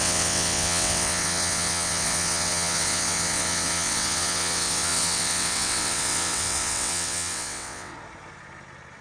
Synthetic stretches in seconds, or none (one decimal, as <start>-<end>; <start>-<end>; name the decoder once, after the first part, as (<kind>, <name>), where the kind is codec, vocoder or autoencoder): 0.0-7.9 (vocoder, WaveNeXt)